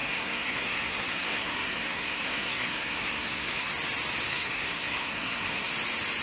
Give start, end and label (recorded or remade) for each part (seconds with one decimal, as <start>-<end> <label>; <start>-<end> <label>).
0.0-3.7 remade; 3.7-4.3 recorded; 4.3-5.7 remade; 5.7-6.2 recorded